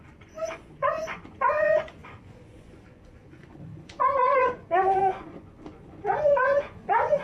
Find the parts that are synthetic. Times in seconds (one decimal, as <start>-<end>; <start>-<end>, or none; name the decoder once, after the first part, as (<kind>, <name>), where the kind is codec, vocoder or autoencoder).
0.0-7.2 (vocoder, Vocos)